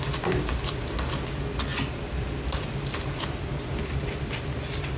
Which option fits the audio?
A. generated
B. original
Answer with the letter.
B